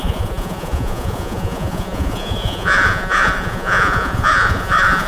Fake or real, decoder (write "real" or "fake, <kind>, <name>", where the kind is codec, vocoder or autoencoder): fake, vocoder, Vocos